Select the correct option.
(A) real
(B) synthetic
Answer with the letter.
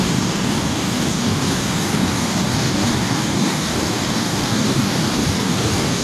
B